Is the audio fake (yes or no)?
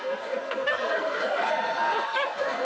yes